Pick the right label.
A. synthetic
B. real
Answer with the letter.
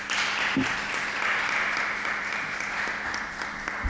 B